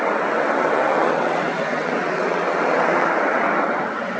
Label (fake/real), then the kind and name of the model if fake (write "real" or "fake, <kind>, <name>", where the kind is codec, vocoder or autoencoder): fake, vocoder, WaveNeXt